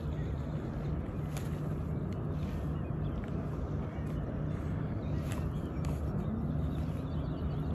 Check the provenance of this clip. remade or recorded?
recorded